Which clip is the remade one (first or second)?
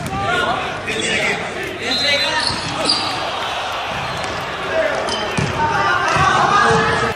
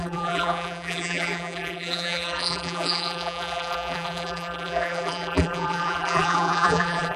second